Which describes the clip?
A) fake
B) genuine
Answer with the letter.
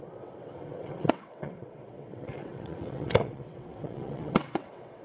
A